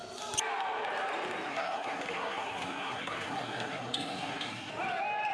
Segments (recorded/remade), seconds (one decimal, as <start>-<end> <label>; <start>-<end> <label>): 0.0-1.5 recorded; 1.5-4.7 remade; 4.7-5.3 recorded